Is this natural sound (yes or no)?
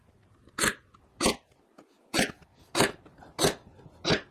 yes